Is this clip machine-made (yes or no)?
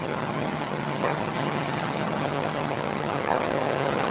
yes